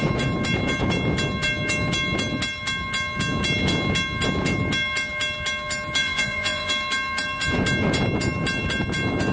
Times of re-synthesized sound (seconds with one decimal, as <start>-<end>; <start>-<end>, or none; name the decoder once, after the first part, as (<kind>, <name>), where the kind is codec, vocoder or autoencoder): 6.0-6.7 (vocoder, Vocos)